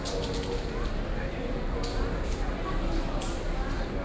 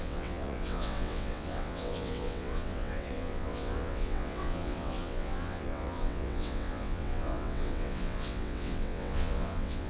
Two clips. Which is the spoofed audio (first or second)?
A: second